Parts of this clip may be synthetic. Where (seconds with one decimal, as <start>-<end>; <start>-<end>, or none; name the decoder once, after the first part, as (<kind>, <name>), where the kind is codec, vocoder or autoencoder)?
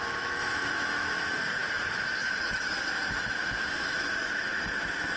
0.0-5.2 (autoencoder, DAC-VAE)